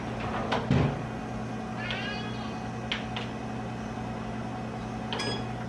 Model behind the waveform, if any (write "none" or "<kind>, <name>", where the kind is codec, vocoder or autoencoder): none